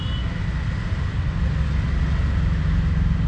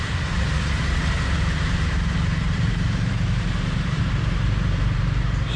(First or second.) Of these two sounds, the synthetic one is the second